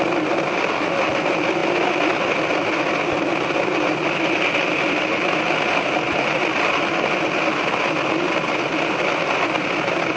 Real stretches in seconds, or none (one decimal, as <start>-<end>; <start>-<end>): 0.0-10.2